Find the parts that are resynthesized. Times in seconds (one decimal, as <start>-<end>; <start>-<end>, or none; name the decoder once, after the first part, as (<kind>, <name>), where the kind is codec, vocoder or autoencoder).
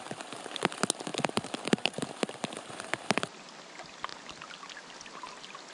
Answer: none